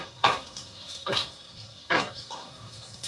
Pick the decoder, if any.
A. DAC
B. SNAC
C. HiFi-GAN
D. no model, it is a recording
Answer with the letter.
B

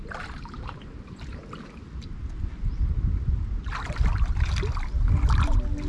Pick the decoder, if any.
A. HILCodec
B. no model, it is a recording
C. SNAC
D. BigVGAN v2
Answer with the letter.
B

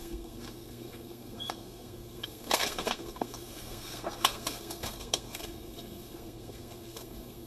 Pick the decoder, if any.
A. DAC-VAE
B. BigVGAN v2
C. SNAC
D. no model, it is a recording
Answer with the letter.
C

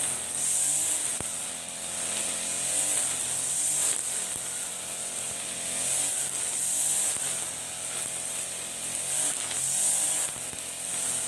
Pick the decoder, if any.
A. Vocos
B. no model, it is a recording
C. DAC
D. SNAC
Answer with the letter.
B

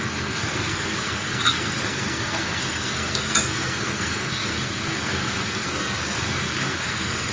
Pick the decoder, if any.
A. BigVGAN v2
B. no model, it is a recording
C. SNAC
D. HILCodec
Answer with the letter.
C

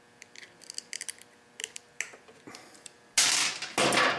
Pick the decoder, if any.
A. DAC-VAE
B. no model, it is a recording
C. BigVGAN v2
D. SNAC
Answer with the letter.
B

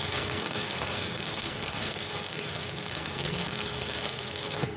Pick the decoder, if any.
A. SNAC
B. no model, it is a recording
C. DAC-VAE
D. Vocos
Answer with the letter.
A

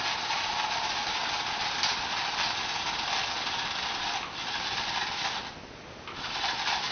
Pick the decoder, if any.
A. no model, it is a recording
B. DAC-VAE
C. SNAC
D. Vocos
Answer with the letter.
A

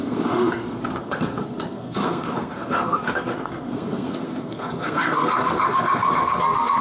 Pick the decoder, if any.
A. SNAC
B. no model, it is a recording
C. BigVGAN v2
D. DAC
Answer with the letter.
A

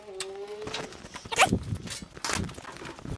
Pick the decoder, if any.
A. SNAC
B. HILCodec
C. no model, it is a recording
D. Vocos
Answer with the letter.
C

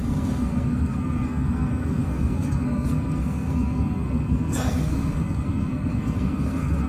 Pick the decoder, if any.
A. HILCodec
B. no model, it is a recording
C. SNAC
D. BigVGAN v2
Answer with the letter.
C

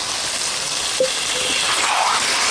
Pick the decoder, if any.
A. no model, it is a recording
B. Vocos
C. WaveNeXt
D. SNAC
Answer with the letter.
A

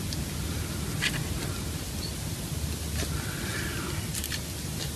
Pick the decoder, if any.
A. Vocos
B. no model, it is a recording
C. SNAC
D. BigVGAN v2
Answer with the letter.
B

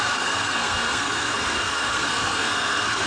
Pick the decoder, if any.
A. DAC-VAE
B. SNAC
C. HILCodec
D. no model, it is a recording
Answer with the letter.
B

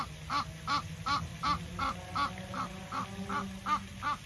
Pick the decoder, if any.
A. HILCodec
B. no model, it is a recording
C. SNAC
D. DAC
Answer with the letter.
B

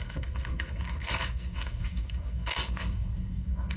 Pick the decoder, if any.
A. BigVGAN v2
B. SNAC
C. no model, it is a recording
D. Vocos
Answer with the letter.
B